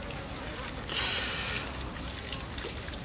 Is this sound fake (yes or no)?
no